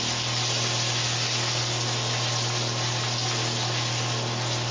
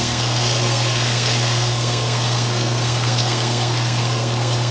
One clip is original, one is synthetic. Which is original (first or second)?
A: first